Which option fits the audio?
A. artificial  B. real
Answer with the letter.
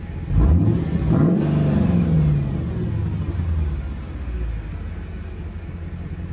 B